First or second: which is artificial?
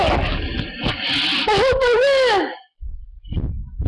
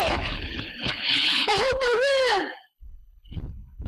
second